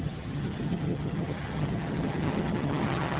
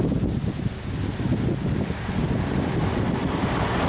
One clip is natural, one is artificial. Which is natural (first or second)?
second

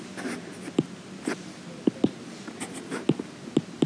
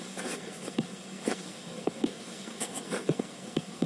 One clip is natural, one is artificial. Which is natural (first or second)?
first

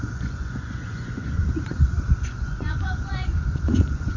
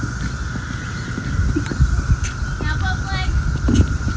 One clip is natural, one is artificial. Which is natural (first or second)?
second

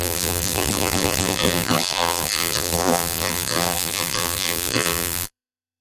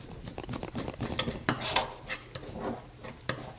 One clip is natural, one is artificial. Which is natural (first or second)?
second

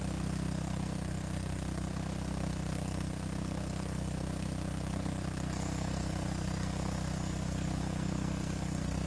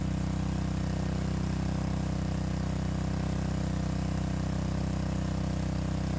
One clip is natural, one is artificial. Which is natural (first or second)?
second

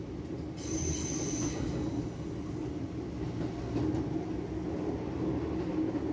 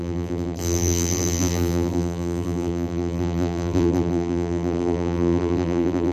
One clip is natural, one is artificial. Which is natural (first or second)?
first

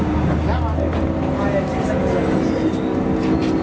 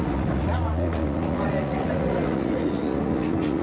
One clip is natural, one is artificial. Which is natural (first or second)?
first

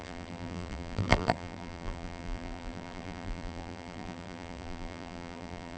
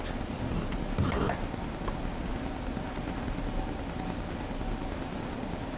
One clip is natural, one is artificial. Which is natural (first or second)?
second